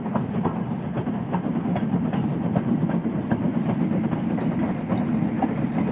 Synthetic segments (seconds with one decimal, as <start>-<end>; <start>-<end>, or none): none